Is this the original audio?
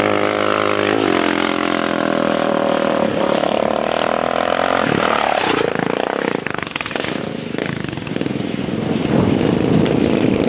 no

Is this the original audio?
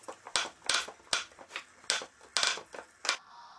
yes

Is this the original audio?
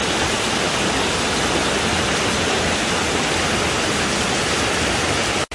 yes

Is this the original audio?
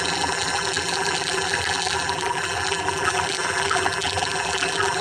no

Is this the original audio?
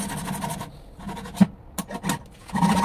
yes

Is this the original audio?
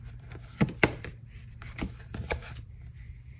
no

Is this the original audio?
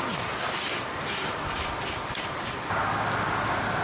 yes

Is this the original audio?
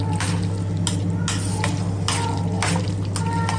yes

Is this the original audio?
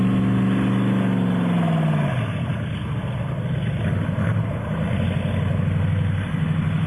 yes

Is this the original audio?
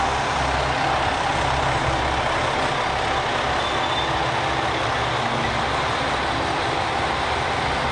yes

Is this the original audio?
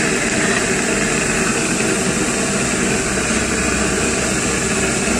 yes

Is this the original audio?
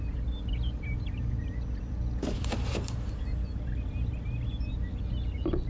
yes